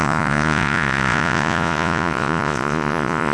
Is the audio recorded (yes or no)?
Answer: no